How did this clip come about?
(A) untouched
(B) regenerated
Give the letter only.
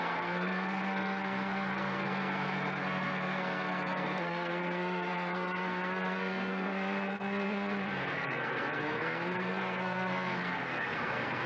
B